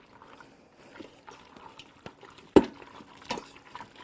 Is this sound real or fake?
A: real